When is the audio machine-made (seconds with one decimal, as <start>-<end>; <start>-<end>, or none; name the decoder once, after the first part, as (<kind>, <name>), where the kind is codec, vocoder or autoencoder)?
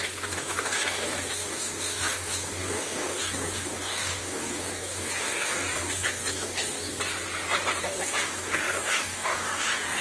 0.0-6.9 (codec, DAC); 7.8-10.0